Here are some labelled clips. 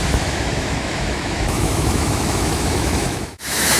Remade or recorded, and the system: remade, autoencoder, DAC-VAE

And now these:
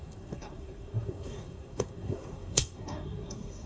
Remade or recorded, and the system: remade, codec, SNAC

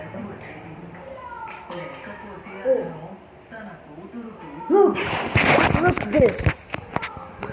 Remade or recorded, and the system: recorded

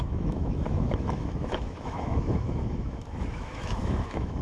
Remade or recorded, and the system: remade, autoencoder, DAC-VAE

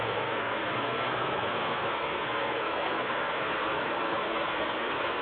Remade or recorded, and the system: remade, codec, SNAC